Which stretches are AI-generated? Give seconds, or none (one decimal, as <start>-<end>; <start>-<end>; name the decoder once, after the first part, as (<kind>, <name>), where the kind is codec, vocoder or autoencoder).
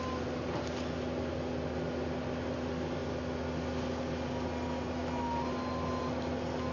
none